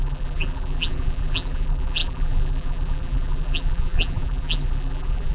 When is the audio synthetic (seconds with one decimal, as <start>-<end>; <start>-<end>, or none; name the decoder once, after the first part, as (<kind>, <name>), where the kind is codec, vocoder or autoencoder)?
0.0-5.3 (vocoder, BigVGAN v2)

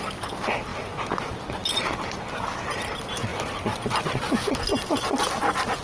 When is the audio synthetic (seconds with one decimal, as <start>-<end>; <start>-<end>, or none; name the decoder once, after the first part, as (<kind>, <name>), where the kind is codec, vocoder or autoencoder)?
1.6-2.2 (vocoder, BigVGAN v2); 3.3-4.5